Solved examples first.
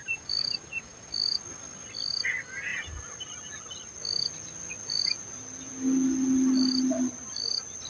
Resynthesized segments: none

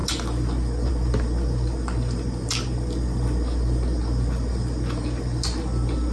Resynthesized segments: none